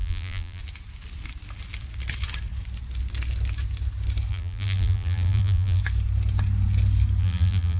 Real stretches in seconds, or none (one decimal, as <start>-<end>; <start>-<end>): 0.6-4.3; 5.8-7.2